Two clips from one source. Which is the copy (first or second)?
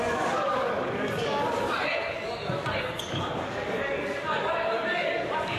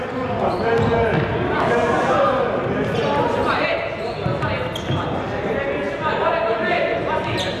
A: first